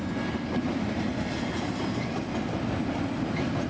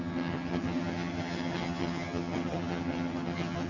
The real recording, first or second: first